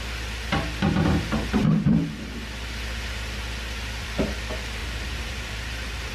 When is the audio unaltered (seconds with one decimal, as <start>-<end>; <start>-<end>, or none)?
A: 0.0-1.6; 2.2-4.8